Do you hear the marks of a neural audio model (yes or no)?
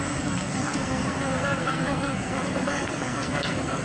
yes